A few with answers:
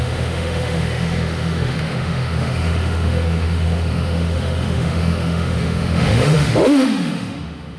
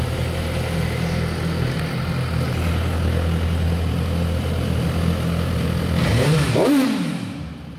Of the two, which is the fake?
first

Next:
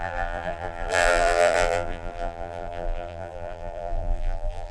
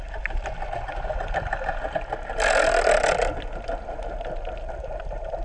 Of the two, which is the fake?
first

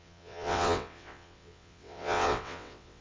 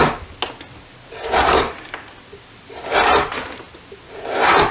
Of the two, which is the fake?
first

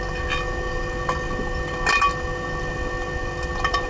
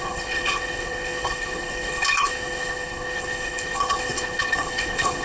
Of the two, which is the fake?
second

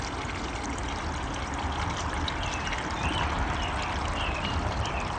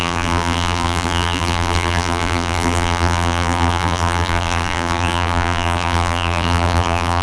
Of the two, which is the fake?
second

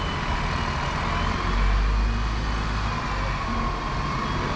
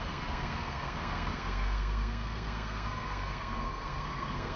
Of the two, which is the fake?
second